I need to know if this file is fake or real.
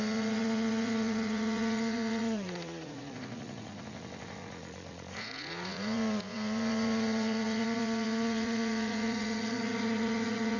fake